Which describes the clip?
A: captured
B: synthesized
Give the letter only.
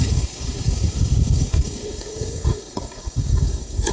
B